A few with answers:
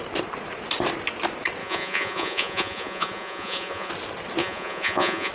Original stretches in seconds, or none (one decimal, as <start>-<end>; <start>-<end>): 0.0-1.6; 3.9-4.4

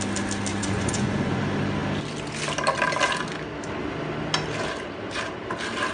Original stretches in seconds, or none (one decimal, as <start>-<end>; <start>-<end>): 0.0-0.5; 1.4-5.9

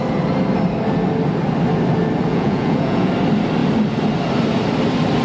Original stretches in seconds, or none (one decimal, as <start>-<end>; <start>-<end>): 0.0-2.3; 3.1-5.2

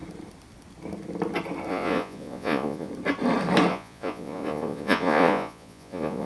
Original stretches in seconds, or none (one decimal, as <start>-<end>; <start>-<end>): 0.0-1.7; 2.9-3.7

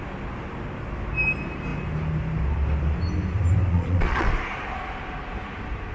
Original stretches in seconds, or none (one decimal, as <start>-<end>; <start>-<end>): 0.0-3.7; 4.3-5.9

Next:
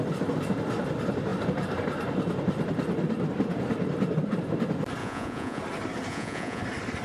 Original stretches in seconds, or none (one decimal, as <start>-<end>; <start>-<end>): 0.0-5.0; 5.6-6.1; 6.6-7.0